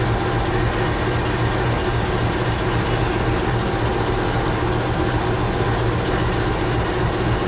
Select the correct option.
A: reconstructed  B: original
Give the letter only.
B